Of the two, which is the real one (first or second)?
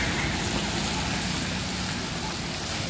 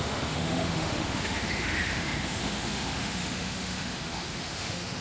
first